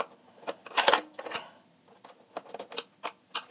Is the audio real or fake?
real